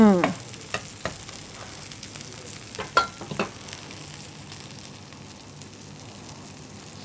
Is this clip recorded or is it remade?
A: recorded